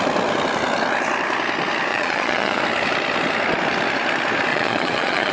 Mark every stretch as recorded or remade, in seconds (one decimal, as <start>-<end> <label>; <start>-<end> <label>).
0.0-1.9 recorded; 1.9-2.6 remade; 2.6-4.5 recorded; 4.5-5.3 remade